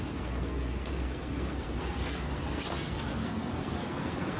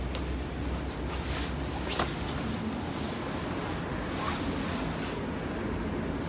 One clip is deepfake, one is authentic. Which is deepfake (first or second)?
first